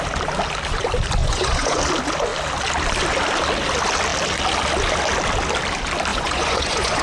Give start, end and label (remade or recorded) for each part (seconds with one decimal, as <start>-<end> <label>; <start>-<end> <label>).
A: 0.0-1.2 recorded; 1.2-1.8 remade; 1.8-6.1 recorded; 6.1-7.0 remade